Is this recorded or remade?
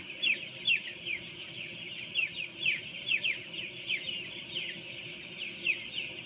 recorded